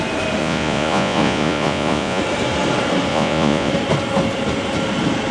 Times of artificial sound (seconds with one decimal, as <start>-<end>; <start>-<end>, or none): 0.4-2.2; 3.1-3.7